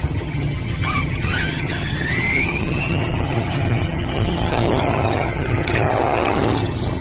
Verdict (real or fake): fake